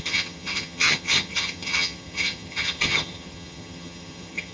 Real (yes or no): no